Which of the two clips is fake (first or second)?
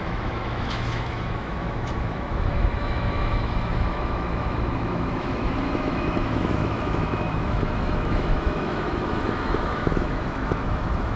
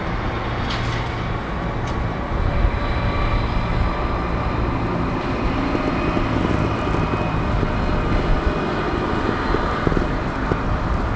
first